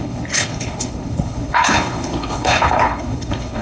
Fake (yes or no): yes